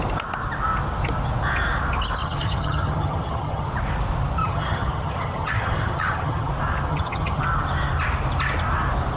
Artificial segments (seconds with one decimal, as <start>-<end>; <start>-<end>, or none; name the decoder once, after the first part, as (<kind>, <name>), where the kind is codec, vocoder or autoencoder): 2.2-3.7 (vocoder, HiFi-GAN); 4.4-6.5; 6.9-7.4